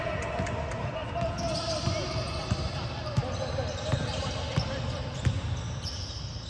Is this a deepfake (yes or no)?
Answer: no